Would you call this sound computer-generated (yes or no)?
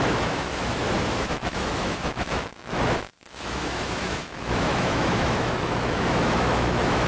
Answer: yes